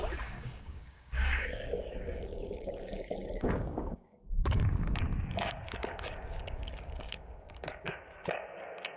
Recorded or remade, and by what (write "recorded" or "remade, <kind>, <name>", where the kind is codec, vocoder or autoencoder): remade, codec, DAC